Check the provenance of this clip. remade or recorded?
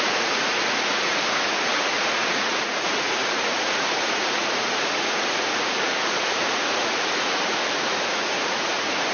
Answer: remade